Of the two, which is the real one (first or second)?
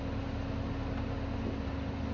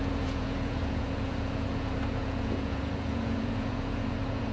first